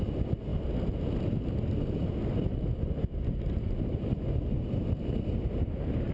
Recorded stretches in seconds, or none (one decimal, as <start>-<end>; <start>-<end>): 0.0-6.1